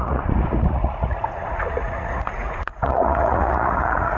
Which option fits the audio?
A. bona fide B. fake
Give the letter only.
B